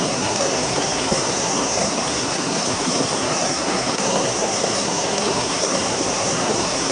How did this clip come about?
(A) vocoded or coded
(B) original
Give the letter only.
A